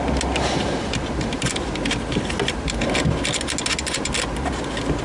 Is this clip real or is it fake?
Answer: real